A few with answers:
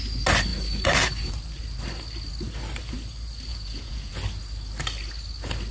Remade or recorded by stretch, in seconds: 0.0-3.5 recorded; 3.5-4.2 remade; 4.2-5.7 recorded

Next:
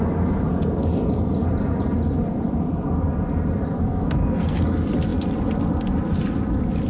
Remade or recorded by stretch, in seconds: 0.0-3.8 recorded; 3.8-4.6 remade; 4.6-6.9 recorded

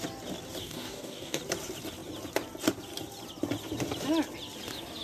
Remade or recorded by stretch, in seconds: 0.0-0.6 recorded; 0.6-1.4 remade; 1.4-5.0 recorded

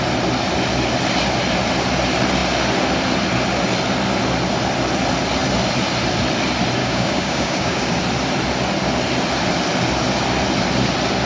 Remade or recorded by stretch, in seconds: 0.0-6.8 recorded; 6.8-7.9 remade; 7.9-11.3 recorded

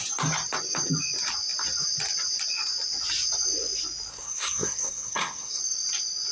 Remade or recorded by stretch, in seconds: 0.0-4.1 recorded; 4.1-5.6 remade; 5.6-6.3 recorded